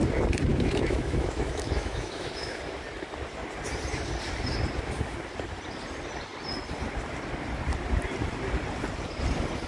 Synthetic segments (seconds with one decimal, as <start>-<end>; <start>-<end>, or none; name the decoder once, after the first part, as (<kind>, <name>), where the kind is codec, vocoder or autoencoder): 0.5-2.6 (autoencoder, DAC-VAE)

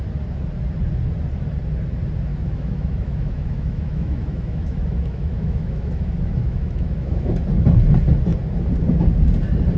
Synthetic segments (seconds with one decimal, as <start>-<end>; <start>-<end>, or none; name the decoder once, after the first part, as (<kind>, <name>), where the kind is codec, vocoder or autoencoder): 2.3-7.3 (autoencoder, DAC-VAE)

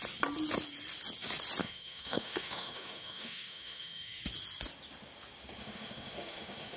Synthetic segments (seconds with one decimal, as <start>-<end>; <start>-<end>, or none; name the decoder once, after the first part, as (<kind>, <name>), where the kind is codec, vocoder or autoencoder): 1.6-4.2 (autoencoder, DAC-VAE); 5.6-6.8

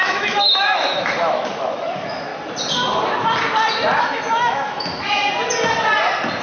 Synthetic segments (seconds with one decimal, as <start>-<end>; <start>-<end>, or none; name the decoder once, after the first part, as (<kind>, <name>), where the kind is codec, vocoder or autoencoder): 0.0-2.3 (autoencoder, DAC-VAE); 4.0-5.2

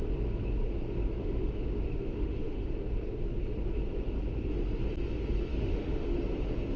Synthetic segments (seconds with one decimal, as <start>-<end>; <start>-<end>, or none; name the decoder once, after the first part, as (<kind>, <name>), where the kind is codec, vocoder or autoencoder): 1.2-2.7 (autoencoder, DAC-VAE); 5.5-6.1